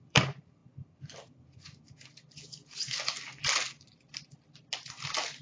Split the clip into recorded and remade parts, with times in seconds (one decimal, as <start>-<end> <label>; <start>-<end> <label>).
0.0-0.6 remade; 0.6-3.8 recorded; 3.8-5.4 remade